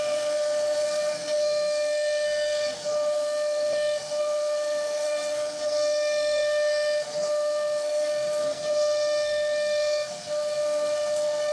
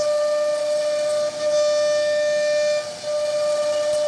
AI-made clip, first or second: first